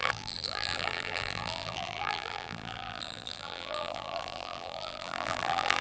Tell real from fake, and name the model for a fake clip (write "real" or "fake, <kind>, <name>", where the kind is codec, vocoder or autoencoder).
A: fake, vocoder, BigVGAN v2